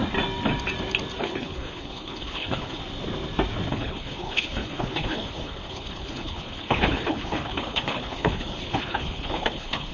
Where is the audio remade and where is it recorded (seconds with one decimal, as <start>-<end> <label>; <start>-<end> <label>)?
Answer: 0.0-1.2 recorded; 1.2-2.8 remade; 2.8-3.7 recorded; 3.7-9.9 remade